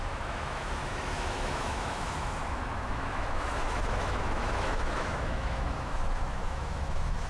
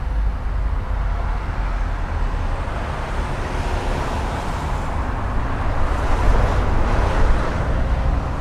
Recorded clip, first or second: second